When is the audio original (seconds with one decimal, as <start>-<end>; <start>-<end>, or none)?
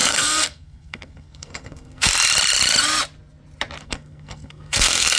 2.1-3.8